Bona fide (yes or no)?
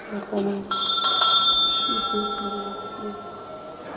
yes